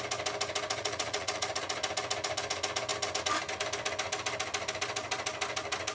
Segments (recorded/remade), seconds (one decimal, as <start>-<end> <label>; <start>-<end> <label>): 0.0-0.8 recorded; 0.8-1.5 remade; 1.5-5.9 recorded